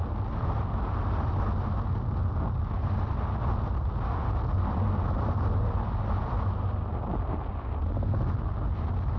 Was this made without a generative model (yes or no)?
yes